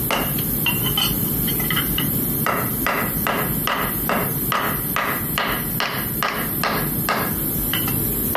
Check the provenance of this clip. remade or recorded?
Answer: recorded